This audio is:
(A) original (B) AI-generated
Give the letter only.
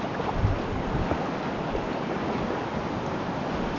A